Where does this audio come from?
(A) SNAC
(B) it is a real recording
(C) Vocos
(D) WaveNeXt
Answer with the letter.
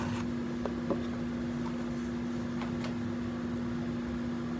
B